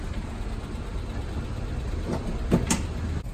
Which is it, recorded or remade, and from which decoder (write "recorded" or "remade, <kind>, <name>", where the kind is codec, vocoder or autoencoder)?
recorded